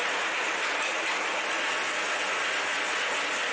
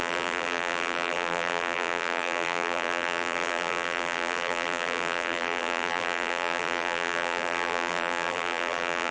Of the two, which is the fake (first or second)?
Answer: second